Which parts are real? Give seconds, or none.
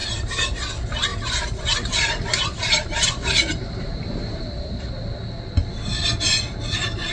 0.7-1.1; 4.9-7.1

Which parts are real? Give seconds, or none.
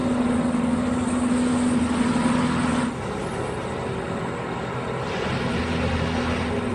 0.0-6.7